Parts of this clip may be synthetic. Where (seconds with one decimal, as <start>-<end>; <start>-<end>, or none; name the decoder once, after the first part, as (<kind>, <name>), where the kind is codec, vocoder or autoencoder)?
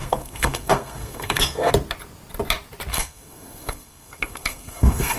0.0-1.7 (codec, SNAC); 2.9-5.2